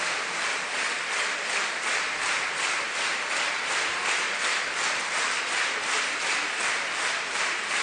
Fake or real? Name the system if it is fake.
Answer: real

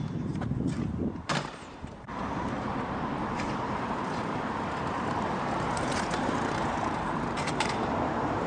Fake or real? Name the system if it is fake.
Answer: fake, vocoder, BigVGAN v2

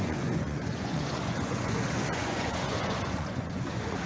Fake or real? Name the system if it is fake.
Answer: fake, vocoder, Vocos